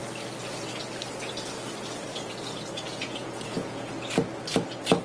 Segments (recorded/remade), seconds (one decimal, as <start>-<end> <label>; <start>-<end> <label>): 0.0-2.9 recorded; 2.9-3.9 remade; 3.9-5.0 recorded